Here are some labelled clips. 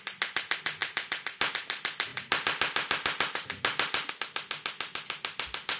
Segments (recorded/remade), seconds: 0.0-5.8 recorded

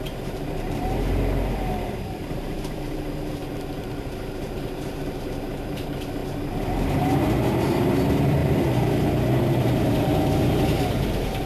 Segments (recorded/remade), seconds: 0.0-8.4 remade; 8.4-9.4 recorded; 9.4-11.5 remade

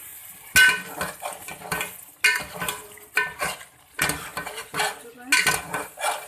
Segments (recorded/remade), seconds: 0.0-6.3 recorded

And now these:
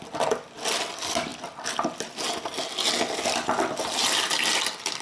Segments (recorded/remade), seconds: 0.0-5.0 recorded

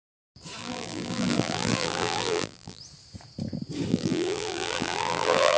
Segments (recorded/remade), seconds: 0.0-0.6 recorded; 0.6-2.8 remade; 2.8-3.9 recorded; 3.9-5.6 remade